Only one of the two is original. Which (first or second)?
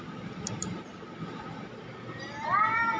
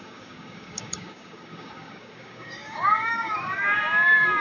first